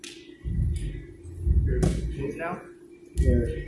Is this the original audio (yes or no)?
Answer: yes